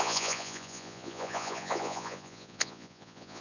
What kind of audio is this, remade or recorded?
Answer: remade